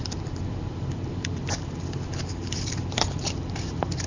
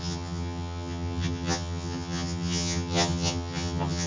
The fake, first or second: second